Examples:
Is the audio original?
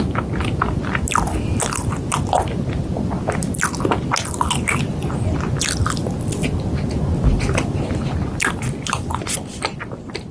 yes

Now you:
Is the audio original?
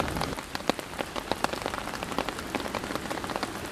no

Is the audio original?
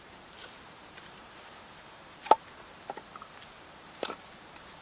no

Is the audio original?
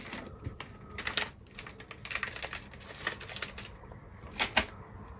yes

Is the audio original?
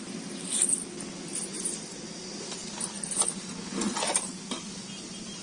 yes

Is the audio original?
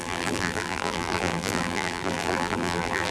no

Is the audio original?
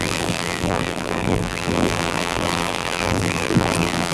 no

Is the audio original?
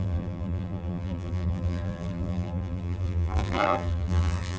no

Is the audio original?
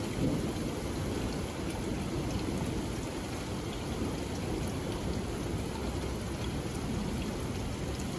yes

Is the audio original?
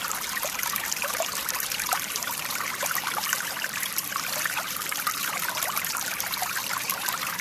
no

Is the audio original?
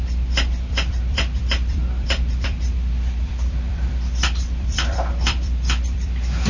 no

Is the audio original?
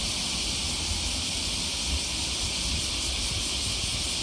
yes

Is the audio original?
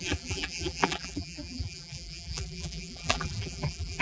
no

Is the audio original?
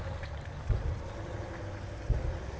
yes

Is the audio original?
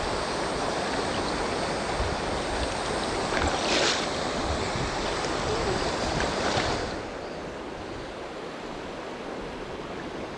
yes